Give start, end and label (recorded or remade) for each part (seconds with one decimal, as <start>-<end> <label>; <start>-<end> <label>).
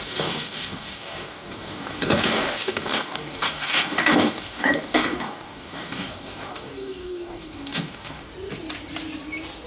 0.0-8.3 remade; 8.3-9.7 recorded